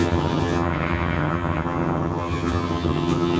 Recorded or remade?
remade